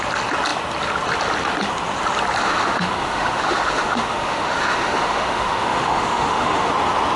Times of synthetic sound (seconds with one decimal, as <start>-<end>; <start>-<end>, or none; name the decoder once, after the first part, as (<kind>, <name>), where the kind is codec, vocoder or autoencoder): 2.4-6.7 (autoencoder, DAC-VAE)